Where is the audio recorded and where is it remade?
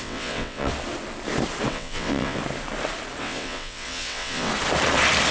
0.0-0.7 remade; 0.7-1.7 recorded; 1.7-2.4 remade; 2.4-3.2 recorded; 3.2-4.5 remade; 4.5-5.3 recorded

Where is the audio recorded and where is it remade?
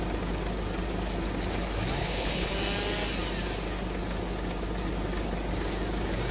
0.0-2.0 recorded; 2.0-2.5 remade; 2.5-6.3 recorded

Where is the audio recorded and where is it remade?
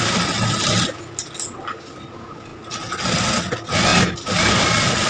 0.0-5.1 recorded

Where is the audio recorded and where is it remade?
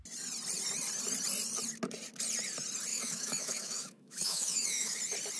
0.0-2.9 recorded; 2.9-5.0 remade; 5.0-5.4 recorded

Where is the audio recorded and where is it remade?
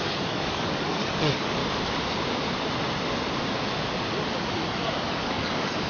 0.0-1.6 remade; 1.6-5.1 recorded; 5.1-5.9 remade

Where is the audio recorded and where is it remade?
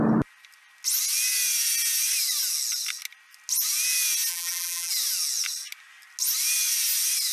0.0-4.3 recorded; 4.3-4.9 remade; 4.9-7.3 recorded